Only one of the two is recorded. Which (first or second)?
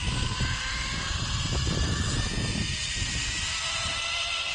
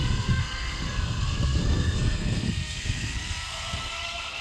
first